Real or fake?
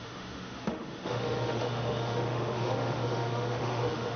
fake